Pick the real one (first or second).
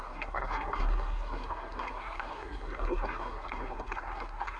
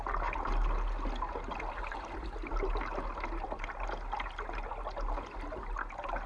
second